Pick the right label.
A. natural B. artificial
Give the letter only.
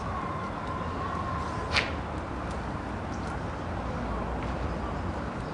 A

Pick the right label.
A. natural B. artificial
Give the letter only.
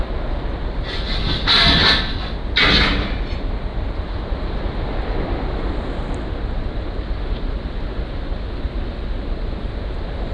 A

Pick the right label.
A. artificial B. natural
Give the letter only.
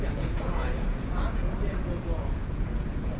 A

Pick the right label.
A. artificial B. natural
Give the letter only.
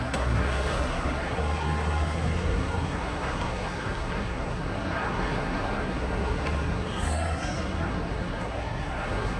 A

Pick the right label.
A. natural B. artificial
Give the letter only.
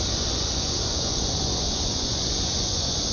B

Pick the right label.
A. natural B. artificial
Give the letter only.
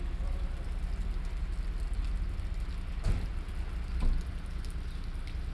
A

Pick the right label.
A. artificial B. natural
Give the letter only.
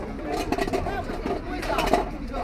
B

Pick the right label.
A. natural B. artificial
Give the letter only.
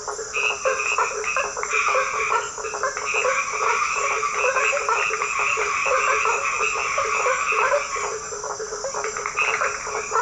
A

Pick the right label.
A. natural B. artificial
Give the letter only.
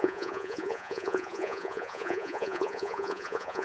B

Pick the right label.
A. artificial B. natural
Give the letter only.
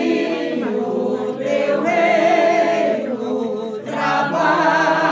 B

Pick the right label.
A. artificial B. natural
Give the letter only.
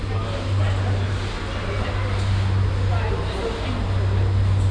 B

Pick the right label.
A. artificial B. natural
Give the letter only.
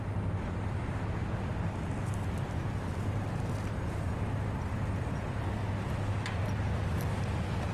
B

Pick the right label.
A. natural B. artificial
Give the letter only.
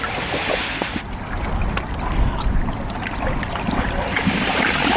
A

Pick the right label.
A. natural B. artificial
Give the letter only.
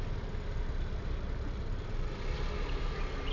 A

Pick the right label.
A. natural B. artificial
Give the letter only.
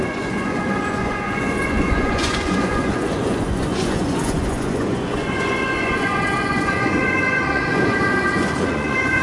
B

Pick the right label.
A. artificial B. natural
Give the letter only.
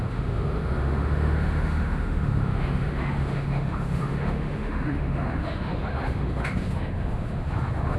A